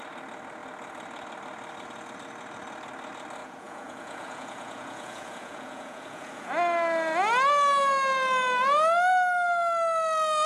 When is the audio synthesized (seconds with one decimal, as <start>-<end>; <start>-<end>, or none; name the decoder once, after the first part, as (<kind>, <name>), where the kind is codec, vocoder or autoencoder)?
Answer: 3.4-6.5 (vocoder, Vocos)